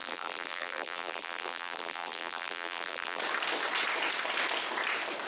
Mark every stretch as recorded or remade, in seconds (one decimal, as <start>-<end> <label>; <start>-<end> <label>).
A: 0.0-3.2 remade; 3.2-5.3 recorded